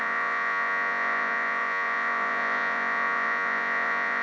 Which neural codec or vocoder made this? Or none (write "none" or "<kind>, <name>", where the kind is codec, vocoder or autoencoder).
vocoder, Vocos